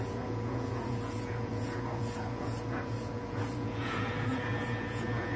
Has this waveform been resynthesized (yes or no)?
yes